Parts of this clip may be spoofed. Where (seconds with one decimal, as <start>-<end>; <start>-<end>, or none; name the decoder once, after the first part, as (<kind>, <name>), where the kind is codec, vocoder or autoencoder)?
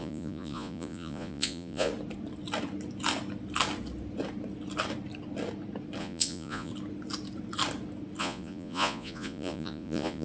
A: 0.0-1.9 (vocoder, Vocos); 6.0-6.7; 8.2-10.2